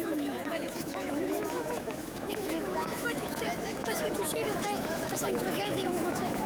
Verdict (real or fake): fake